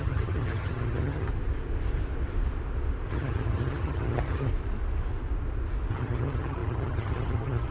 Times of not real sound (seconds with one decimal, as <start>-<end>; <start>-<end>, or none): 0.0-1.3; 3.1-4.5; 5.9-7.7